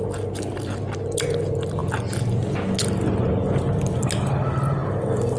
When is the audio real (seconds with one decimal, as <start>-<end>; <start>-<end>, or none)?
0.0-5.4